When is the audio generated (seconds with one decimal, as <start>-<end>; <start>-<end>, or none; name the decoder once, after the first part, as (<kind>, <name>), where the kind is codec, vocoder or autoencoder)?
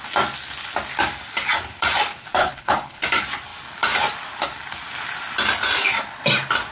2.4-3.0 (codec, HILCodec)